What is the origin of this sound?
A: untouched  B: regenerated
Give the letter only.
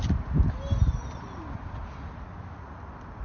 A